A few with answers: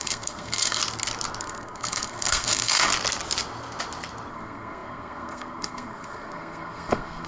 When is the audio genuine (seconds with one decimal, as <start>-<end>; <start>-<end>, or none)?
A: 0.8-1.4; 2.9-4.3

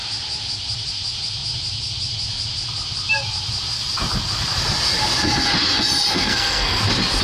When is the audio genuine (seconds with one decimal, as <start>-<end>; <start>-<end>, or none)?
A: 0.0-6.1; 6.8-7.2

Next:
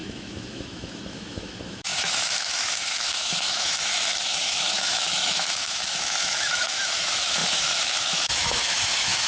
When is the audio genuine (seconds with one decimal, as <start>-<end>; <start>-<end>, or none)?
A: none

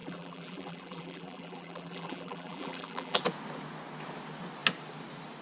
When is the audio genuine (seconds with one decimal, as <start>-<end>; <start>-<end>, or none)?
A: 3.2-5.4

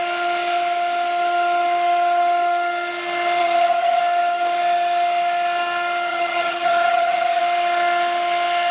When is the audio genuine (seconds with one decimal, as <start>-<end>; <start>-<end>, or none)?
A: 0.0-3.4; 4.0-6.1; 7.4-8.7

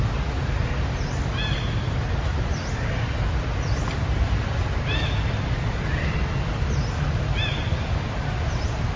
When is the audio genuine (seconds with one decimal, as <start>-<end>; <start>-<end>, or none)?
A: 0.0-9.0

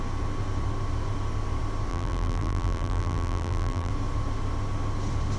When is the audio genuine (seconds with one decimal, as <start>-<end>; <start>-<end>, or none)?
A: 0.0-1.9; 3.9-5.4

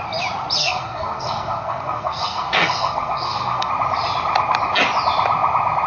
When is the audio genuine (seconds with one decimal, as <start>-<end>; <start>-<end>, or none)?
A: 0.0-0.6; 3.7-5.9